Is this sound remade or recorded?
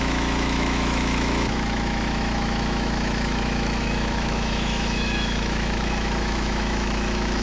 remade